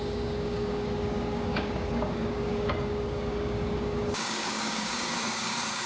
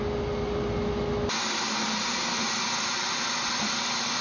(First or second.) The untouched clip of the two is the second